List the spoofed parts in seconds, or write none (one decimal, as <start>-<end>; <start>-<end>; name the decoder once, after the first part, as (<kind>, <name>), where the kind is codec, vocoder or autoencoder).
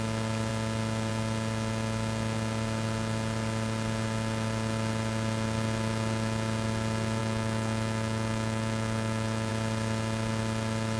7.2-9.5 (autoencoder, DAC-VAE)